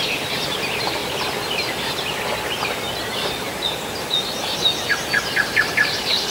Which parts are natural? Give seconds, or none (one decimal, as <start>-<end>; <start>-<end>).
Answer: 0.0-6.3